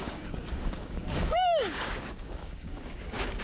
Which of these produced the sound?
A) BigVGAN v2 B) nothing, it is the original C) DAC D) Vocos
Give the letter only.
C